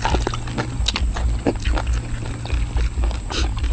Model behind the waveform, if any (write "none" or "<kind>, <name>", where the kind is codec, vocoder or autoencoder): none